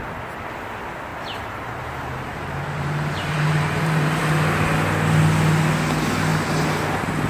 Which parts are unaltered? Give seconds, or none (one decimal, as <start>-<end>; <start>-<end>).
0.0-1.1; 4.2-7.3